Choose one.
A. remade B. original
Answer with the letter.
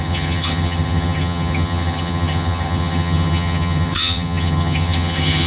A